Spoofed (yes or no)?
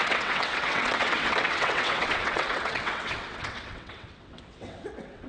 yes